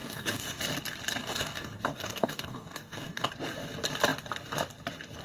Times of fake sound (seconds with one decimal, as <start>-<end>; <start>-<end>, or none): 0.0-0.6; 1.2-3.3